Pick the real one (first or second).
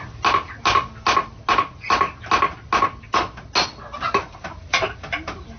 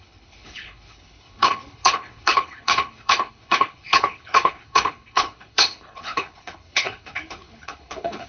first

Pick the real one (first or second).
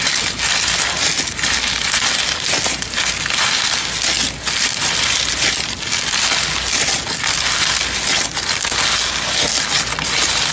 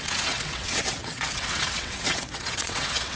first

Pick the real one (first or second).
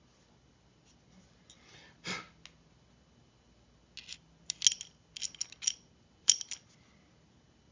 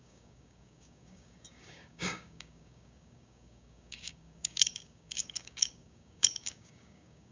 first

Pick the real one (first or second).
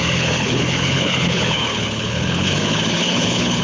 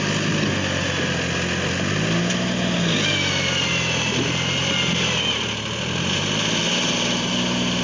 second